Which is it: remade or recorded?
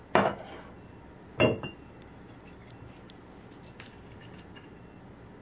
recorded